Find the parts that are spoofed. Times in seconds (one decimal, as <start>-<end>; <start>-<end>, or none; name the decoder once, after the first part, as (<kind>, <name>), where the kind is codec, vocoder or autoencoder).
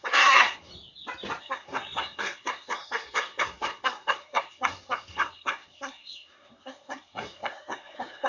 0.0-0.7 (codec, SNAC); 1.4-8.3